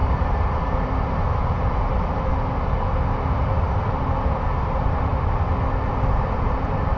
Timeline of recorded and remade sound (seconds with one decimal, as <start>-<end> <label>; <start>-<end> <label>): 0.0-2.3 remade; 2.3-3.7 recorded; 3.7-5.1 remade; 5.1-5.9 recorded; 5.9-7.0 remade